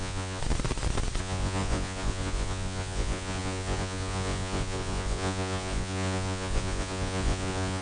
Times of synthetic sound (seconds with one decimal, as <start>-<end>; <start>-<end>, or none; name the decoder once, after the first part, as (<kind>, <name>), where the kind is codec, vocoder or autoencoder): 0.0-0.4 (vocoder, Vocos); 1.2-7.8